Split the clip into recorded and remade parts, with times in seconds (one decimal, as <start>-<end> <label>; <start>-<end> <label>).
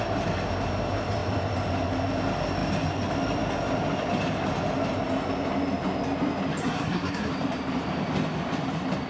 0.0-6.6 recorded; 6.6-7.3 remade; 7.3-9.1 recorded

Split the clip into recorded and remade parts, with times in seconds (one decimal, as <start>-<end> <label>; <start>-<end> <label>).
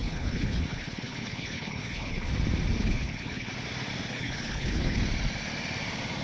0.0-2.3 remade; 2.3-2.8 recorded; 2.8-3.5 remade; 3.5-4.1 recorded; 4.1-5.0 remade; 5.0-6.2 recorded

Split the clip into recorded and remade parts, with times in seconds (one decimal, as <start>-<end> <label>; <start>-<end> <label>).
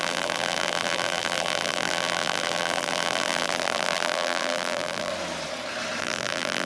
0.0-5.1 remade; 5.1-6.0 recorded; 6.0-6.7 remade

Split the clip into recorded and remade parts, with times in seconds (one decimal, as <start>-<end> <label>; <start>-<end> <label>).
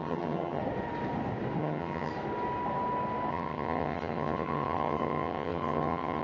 0.0-0.6 remade; 0.6-1.6 recorded; 1.6-2.1 remade; 2.1-3.3 recorded; 3.3-6.2 remade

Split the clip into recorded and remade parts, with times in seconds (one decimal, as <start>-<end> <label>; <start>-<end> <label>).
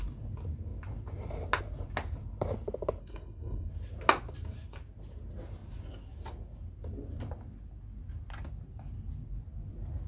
0.0-3.0 recorded; 3.0-3.7 remade; 3.7-10.1 recorded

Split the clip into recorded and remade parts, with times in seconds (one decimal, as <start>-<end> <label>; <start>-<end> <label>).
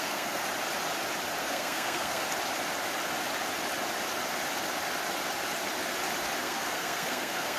0.0-0.4 remade; 0.4-1.4 recorded; 1.4-2.2 remade; 2.2-6.4 recorded; 6.4-7.6 remade